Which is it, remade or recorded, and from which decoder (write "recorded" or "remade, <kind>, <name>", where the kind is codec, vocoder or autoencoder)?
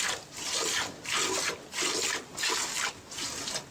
recorded